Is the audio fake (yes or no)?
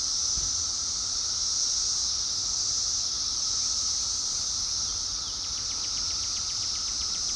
no